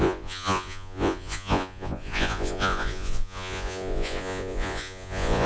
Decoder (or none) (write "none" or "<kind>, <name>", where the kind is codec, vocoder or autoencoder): vocoder, Vocos